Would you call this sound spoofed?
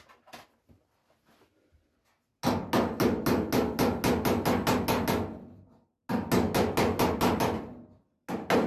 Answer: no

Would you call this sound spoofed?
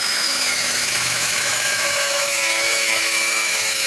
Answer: yes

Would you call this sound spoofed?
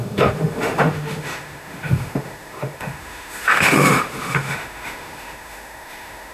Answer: yes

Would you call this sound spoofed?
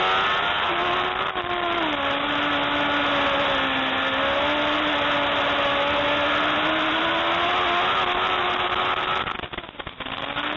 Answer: no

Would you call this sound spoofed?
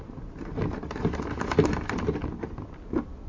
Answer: no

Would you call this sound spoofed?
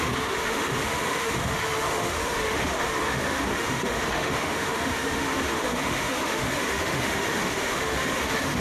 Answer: yes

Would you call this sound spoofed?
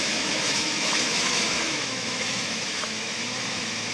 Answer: yes